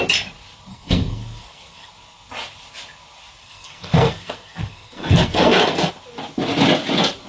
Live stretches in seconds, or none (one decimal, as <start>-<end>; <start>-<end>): 0.0-0.7; 1.9-3.4; 5.9-7.3